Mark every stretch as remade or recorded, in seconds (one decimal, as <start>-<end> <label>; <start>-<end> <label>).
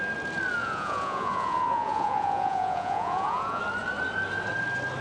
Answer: 0.0-0.6 recorded; 0.6-3.6 remade; 3.6-5.0 recorded